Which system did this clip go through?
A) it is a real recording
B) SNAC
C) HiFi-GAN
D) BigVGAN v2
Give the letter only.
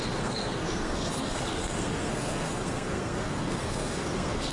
B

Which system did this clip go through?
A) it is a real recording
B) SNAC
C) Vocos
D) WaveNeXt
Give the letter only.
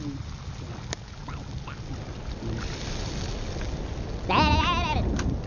A